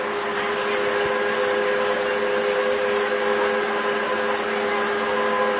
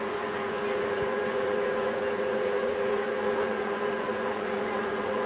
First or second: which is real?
first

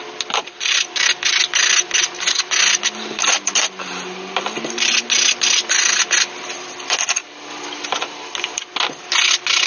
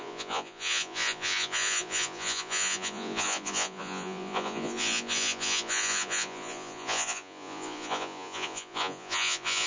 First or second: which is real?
first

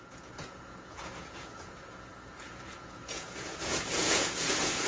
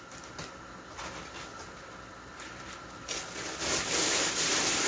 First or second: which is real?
second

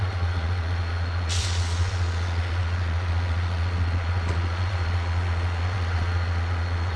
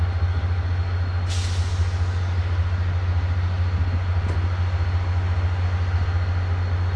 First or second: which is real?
second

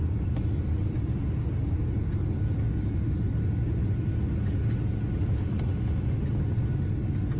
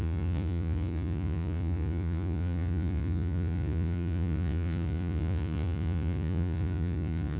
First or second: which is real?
first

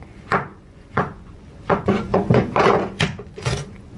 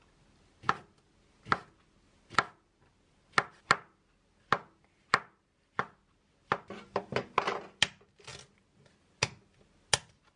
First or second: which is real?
second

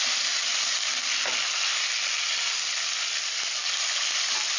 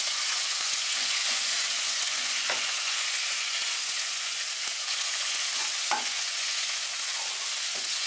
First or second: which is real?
first